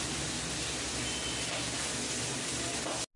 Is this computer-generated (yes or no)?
no